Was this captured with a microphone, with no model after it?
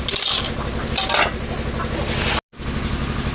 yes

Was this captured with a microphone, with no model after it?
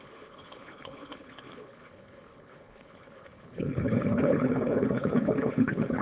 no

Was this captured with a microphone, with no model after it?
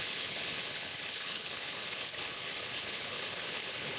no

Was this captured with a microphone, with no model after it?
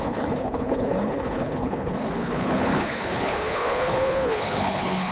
no